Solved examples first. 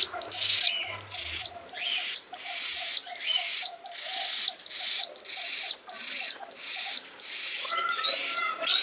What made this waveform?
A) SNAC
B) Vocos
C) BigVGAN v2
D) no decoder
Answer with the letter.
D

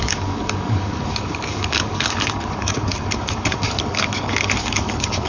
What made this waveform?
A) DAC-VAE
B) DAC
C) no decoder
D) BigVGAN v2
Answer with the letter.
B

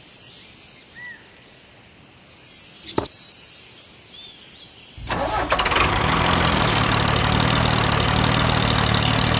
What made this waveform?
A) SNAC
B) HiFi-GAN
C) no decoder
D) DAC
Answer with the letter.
C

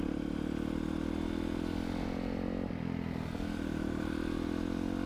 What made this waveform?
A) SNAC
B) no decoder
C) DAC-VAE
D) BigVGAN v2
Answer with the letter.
B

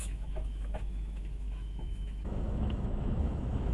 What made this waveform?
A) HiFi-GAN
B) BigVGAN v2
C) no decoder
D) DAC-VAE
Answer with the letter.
D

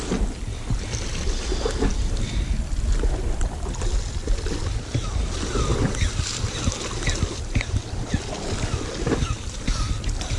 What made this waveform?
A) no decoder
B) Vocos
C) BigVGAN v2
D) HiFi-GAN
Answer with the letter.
A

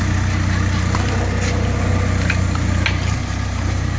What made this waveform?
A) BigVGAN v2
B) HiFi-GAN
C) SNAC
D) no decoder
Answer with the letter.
D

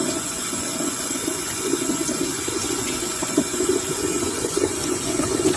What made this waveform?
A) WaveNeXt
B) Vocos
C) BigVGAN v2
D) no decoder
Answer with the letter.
B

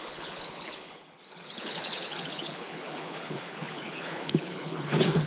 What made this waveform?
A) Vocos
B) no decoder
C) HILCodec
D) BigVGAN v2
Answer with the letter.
C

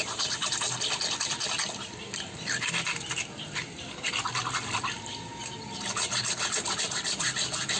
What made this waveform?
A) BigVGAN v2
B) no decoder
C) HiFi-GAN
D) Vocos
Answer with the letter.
B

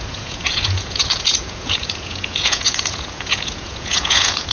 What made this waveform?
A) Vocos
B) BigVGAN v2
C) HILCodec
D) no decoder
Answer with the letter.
A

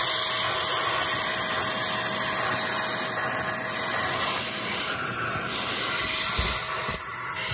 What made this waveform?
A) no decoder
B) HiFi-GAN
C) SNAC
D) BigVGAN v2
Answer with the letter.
A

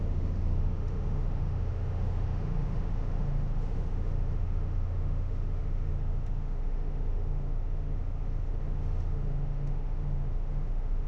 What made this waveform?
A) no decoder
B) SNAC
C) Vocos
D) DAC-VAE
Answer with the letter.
D